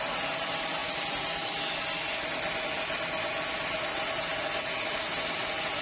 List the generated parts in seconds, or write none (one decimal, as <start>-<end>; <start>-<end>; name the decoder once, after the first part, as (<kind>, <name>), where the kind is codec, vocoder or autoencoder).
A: none